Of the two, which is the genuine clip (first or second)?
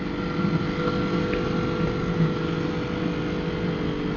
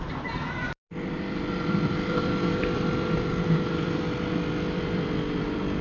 first